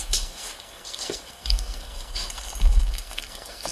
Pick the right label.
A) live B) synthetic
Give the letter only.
B